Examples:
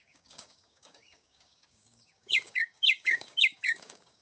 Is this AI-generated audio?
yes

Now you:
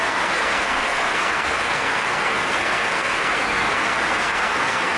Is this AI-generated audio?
yes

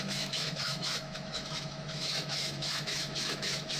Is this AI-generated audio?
yes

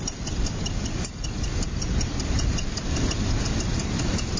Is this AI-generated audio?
no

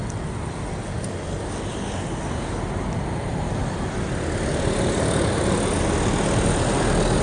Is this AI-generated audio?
no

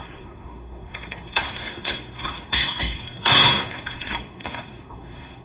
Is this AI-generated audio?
yes